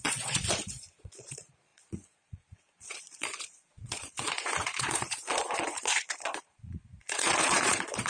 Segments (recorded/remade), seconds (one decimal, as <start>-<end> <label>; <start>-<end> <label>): 0.0-8.1 remade

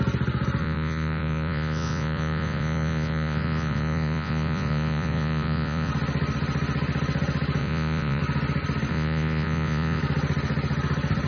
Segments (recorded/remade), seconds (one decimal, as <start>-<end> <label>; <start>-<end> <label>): 0.0-0.6 recorded; 0.6-5.9 remade; 5.9-7.6 recorded; 7.6-8.2 remade; 8.2-8.9 recorded; 8.9-10.0 remade; 10.0-11.3 recorded

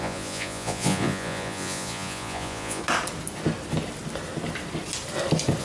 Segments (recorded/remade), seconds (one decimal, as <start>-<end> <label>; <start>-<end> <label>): 0.0-2.8 remade; 2.8-5.6 recorded

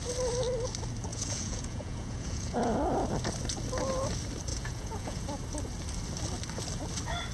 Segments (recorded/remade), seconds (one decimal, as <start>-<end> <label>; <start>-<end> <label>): 0.0-1.1 recorded; 1.1-2.7 remade; 2.7-4.5 recorded; 4.5-5.2 remade; 5.2-7.3 recorded

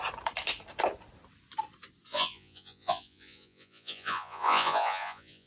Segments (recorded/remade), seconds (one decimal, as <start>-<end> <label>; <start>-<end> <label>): 0.0-2.1 recorded; 2.1-5.5 remade

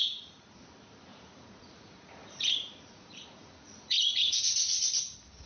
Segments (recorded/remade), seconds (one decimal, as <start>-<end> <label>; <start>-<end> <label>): 0.0-0.6 remade; 0.6-1.1 recorded; 1.1-4.4 remade; 4.4-5.5 recorded